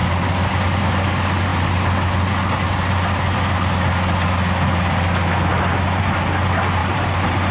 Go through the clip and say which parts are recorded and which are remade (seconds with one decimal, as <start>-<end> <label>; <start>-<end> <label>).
0.0-6.8 recorded; 6.8-7.5 remade